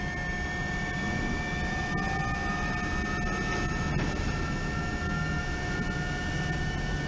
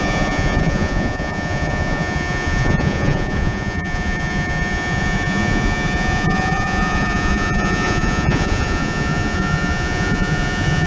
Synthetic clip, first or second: second